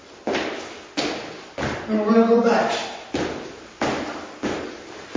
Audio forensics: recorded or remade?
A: remade